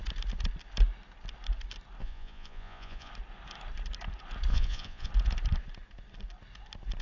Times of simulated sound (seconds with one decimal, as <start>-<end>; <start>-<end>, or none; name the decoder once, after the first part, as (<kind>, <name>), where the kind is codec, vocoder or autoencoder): 2.0-3.1 (vocoder, Vocos); 4.5-5.1